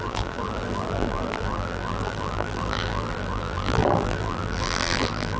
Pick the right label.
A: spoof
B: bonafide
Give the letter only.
A